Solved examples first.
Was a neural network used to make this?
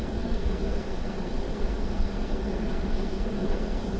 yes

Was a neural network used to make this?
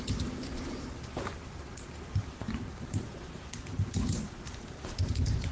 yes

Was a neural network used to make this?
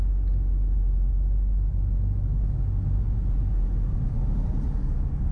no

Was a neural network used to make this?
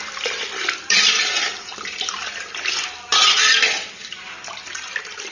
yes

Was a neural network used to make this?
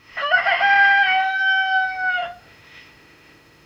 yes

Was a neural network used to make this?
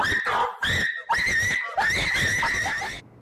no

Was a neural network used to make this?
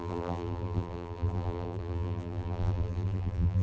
yes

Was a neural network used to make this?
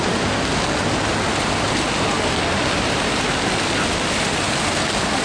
no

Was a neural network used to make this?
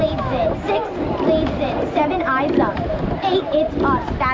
no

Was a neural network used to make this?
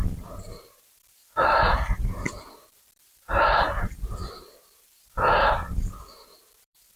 yes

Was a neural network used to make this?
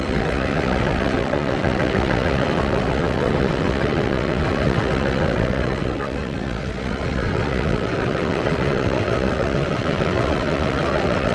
yes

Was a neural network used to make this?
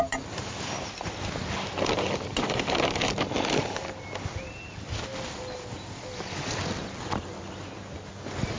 no